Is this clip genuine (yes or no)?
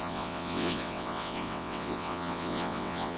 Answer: no